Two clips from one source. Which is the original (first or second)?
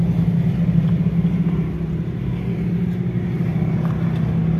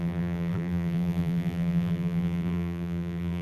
first